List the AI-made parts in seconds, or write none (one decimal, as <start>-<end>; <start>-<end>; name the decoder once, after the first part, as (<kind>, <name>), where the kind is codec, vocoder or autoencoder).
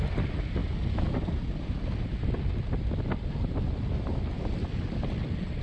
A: none